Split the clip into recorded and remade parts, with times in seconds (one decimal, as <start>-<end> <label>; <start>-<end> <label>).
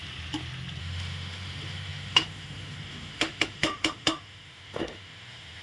0.0-0.8 recorded; 0.8-5.6 remade